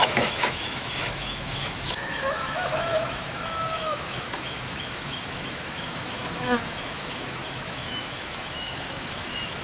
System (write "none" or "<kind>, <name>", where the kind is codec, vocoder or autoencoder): autoencoder, DAC-VAE